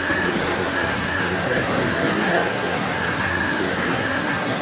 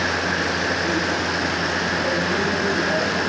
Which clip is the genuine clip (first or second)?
second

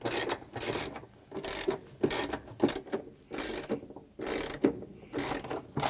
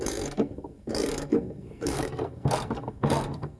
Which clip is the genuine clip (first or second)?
first